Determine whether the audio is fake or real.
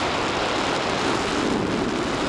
real